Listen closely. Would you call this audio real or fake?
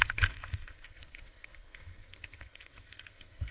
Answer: fake